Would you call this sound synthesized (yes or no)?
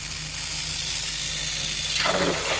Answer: no